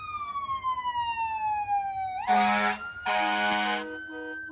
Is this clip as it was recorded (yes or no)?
yes